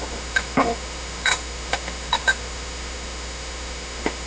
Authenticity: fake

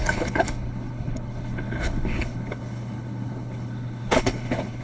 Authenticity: fake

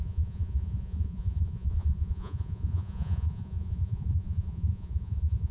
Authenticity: fake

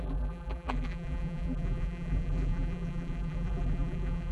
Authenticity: fake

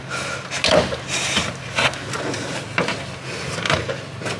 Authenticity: real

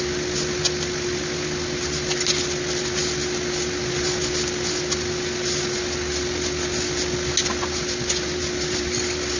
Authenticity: real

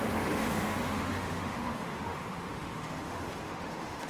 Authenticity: fake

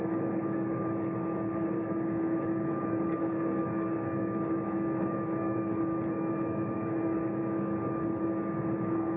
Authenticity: fake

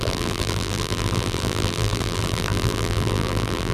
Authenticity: fake